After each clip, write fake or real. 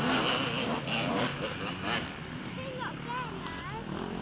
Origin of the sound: real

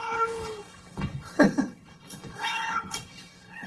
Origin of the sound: fake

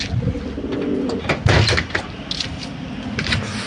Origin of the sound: real